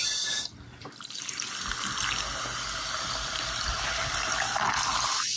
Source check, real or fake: real